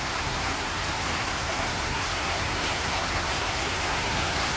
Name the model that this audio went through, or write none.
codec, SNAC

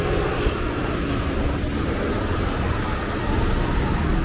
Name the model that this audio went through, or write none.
none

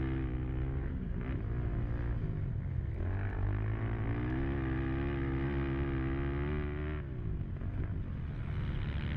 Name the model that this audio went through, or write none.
none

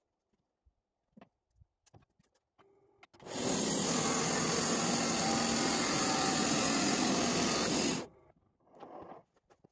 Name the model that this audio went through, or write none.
none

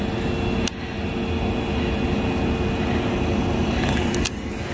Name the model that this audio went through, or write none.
none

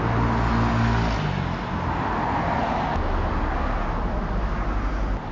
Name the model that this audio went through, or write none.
none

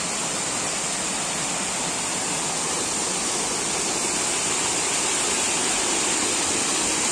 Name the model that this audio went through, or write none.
none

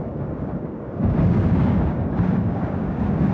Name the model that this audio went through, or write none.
codec, DAC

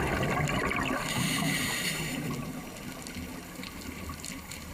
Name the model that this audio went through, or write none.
none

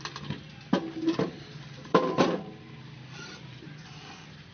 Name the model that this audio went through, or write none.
vocoder, BigVGAN v2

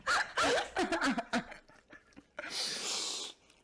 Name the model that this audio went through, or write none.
none